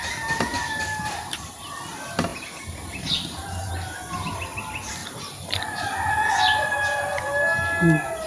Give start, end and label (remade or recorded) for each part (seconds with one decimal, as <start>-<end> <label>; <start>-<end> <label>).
0.0-0.5 recorded; 0.5-1.7 remade; 1.7-2.3 recorded; 2.3-3.7 remade; 3.7-5.0 recorded; 5.0-6.1 remade; 6.1-8.3 recorded